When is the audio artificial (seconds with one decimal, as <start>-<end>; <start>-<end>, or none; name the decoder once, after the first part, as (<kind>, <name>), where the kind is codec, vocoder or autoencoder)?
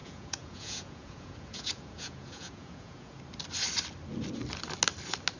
0.0-3.2 (vocoder, Vocos)